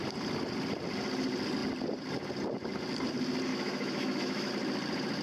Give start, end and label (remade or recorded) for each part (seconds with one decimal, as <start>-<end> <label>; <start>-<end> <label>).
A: 0.0-3.5 recorded; 3.5-4.5 remade; 4.5-5.2 recorded